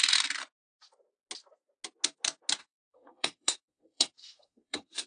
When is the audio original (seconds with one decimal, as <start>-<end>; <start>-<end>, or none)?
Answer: 0.0-2.6